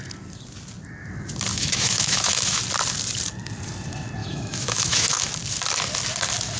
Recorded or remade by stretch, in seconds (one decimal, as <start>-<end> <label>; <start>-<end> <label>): 0.0-1.5 recorded; 1.5-2.6 remade; 2.6-4.2 recorded; 4.2-5.3 remade; 5.3-6.6 recorded